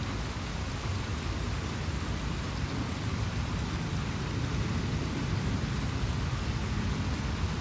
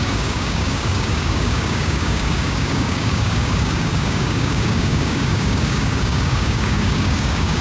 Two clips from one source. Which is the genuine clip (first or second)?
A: first